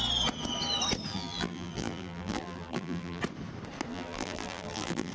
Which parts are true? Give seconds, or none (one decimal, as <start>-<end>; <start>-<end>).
0.0-1.1; 3.2-3.9